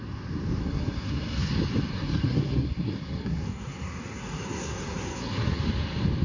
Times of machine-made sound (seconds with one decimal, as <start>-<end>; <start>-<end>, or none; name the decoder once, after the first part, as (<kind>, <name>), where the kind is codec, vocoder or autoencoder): 0.6-1.5 (codec, SNAC); 1.9-5.6

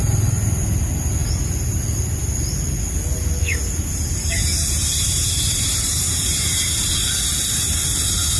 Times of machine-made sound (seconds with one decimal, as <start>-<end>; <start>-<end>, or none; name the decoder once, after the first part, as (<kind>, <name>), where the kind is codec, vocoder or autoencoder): 3.5-6.9 (vocoder, BigVGAN v2)

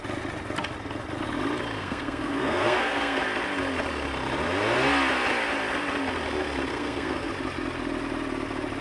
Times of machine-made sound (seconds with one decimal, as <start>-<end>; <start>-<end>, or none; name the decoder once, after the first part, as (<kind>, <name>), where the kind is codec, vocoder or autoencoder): 1.8-3.2 (codec, SNAC); 6.7-7.3

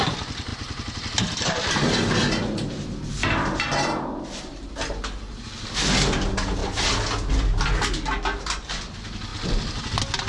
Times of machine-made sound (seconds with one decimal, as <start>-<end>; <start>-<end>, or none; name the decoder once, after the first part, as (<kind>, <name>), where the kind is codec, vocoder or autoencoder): none

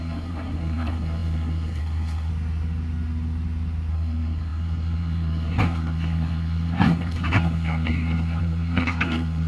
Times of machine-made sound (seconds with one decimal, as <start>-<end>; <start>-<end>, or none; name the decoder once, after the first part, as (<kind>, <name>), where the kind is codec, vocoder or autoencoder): 0.0-2.3 (codec, SNAC); 3.9-9.5

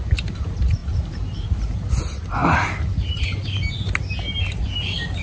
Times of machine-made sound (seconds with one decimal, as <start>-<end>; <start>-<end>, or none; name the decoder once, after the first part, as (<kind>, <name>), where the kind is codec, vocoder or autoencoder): none

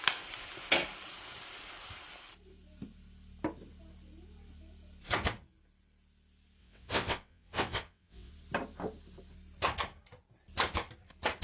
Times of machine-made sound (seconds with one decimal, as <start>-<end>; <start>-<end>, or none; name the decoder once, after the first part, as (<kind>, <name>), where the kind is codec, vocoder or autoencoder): 6.6-8.3 (vocoder, WaveNeXt)